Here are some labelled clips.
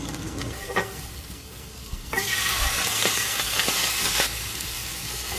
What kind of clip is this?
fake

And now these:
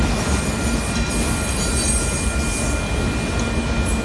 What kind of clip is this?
real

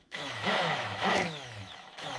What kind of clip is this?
fake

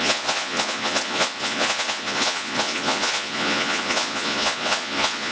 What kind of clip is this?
fake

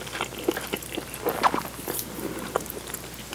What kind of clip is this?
real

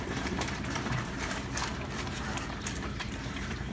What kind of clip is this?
fake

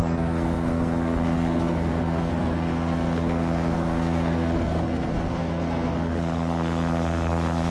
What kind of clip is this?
fake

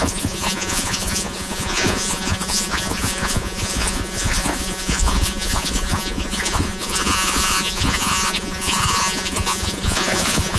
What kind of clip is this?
fake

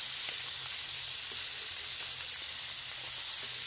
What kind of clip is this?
real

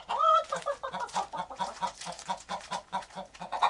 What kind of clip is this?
fake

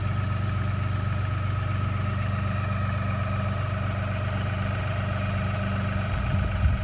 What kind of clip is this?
real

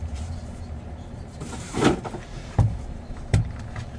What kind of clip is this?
fake